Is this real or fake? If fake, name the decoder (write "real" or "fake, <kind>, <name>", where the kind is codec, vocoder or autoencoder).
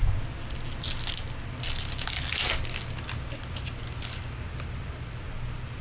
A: real